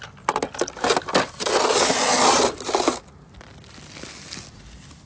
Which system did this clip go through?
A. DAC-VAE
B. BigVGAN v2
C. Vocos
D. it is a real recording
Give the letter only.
D